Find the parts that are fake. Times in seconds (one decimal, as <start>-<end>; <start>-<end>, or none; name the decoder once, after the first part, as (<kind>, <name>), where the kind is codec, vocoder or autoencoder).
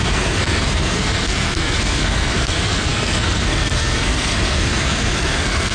0.0-5.7 (codec, SNAC)